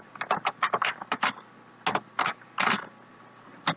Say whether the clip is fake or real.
real